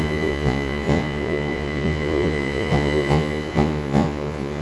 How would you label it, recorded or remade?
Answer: remade